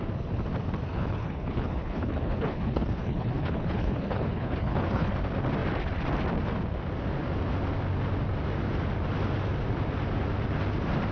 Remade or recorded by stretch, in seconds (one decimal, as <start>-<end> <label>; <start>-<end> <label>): 0.0-0.9 recorded; 0.9-5.1 remade; 5.1-11.1 recorded